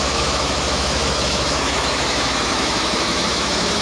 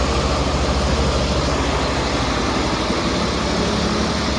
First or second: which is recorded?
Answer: second